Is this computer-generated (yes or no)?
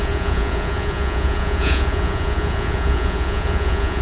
yes